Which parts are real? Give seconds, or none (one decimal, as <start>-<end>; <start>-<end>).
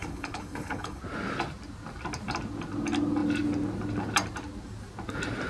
1.0-5.5